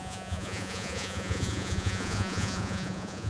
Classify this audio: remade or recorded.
remade